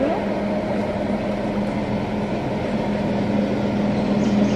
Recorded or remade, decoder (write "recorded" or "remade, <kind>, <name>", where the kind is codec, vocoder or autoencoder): recorded